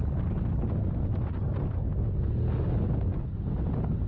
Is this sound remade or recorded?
recorded